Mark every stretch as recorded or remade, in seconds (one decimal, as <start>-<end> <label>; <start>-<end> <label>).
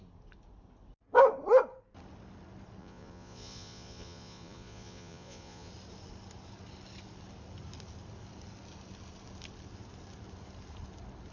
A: 0.0-2.8 recorded; 2.8-5.7 remade; 5.7-11.3 recorded